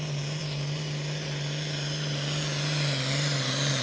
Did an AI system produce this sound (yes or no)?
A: no